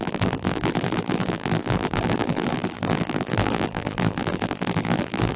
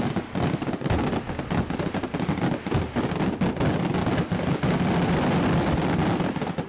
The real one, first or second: second